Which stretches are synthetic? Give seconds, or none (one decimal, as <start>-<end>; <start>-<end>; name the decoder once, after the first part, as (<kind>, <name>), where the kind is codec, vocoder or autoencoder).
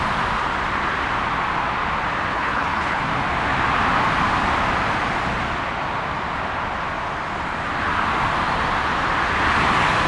2.3-3.0 (codec, HILCodec)